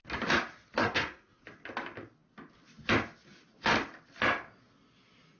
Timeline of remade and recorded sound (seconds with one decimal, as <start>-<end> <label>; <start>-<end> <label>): 0.0-0.8 recorded; 0.8-1.4 remade; 1.4-5.4 recorded

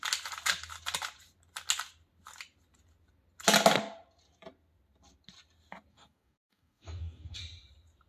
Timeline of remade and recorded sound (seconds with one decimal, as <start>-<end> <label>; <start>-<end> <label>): 0.0-5.9 recorded; 5.9-7.4 remade; 7.4-8.1 recorded

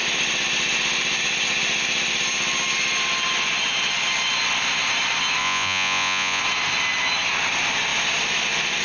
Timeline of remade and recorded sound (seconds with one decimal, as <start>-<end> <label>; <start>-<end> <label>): 0.0-5.4 recorded; 5.4-6.4 remade; 6.4-8.8 recorded